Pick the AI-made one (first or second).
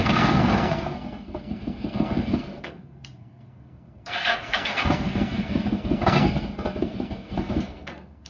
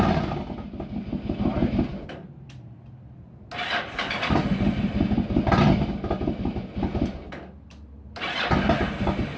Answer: first